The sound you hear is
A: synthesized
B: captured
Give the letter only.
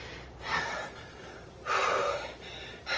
A